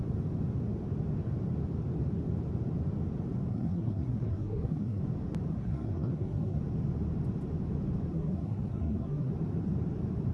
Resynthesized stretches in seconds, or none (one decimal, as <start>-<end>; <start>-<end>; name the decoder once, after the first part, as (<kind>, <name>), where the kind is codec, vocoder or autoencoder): 3.5-5.0 (codec, SNAC); 5.5-6.6; 8.1-9.3